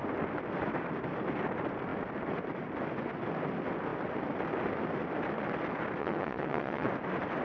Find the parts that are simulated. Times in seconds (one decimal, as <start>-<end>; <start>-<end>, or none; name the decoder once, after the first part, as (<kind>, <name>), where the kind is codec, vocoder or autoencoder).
6.0-6.9 (vocoder, WaveNeXt)